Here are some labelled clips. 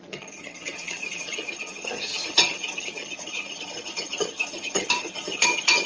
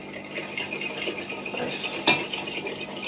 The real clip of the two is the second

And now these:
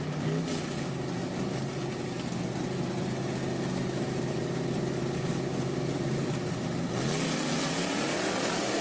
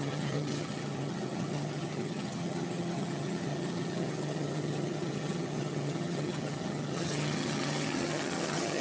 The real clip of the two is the first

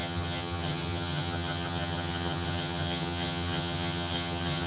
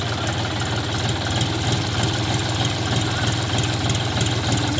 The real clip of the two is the second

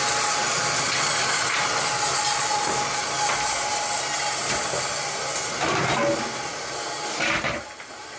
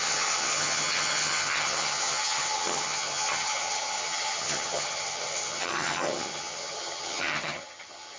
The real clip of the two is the first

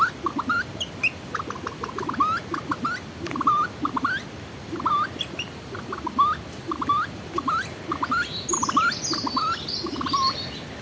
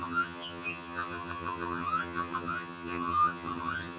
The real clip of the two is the first